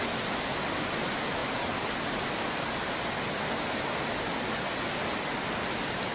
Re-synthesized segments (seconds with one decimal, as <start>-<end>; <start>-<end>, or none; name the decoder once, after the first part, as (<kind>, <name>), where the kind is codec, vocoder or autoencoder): none